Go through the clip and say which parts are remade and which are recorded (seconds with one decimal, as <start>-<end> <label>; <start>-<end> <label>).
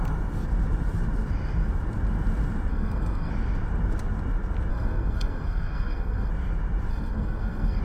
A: 0.0-2.7 recorded; 2.7-3.3 remade; 3.3-4.7 recorded; 4.7-6.3 remade; 6.3-6.9 recorded; 6.9-7.8 remade